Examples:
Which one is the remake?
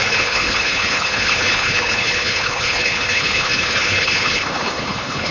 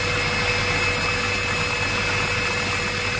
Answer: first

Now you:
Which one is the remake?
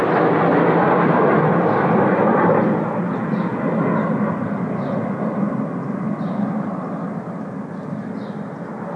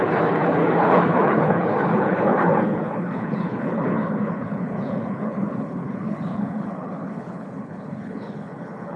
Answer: second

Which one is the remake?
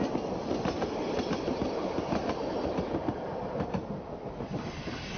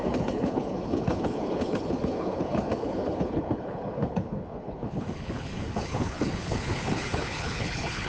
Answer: second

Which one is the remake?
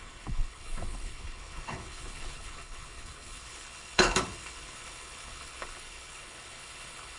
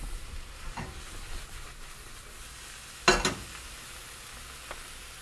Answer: first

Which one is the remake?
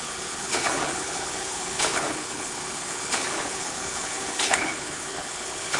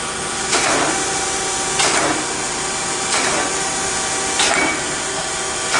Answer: first